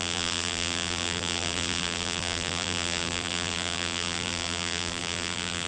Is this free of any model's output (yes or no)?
no